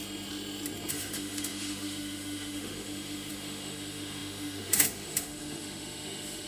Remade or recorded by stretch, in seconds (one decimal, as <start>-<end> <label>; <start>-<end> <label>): 0.0-0.9 recorded; 0.9-6.5 remade